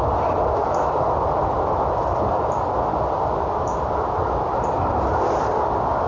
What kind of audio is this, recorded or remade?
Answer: recorded